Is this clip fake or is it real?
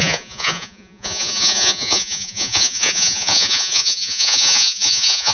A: fake